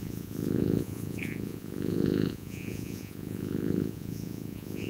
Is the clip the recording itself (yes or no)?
no